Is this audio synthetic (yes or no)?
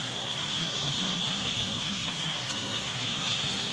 yes